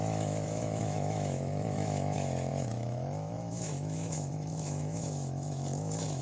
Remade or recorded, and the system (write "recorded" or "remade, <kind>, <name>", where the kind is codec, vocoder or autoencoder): remade, autoencoder, DAC-VAE